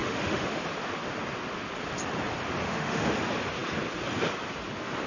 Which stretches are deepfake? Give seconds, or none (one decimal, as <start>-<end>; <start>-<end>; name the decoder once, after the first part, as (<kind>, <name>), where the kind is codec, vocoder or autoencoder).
0.0-0.6 (autoencoder, DAC-VAE); 2.6-3.1